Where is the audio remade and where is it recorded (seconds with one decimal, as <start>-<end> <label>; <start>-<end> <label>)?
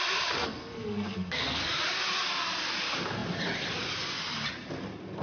0.0-0.4 recorded; 0.4-1.6 remade; 1.6-5.2 recorded